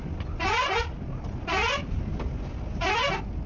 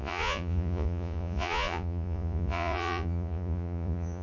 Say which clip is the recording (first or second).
first